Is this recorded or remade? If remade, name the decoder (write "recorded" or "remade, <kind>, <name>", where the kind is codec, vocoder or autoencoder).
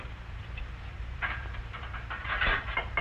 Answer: remade, vocoder, BigVGAN v2